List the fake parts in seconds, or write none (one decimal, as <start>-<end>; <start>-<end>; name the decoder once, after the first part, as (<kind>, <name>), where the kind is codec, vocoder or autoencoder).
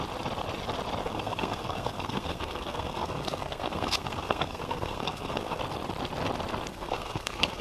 1.0-5.6 (codec, SNAC); 6.7-7.6